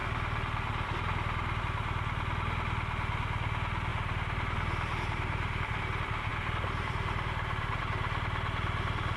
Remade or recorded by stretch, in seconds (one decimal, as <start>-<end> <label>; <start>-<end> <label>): 0.0-3.9 recorded; 3.9-5.8 remade; 5.8-6.3 recorded; 6.3-7.8 remade; 7.8-9.2 recorded